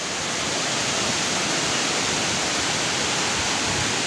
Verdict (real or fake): real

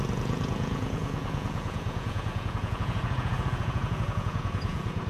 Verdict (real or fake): fake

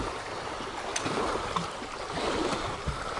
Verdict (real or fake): real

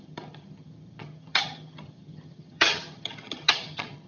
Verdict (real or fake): fake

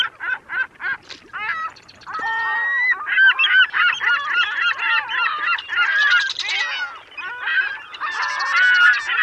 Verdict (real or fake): real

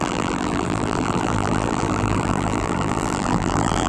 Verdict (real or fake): fake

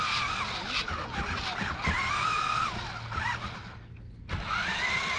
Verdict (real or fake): real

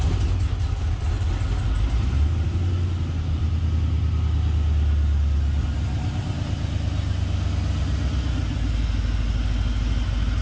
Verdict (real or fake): real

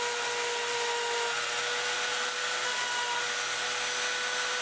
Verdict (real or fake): real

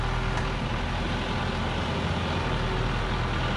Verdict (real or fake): real